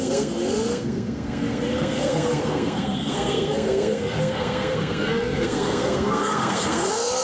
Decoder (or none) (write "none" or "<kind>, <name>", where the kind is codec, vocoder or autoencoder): codec, SNAC